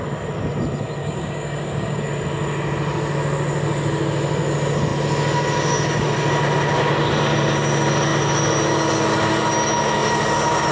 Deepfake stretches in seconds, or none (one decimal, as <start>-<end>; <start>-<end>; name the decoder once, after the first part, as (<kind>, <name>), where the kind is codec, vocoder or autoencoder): 1.0-2.0 (codec, DAC)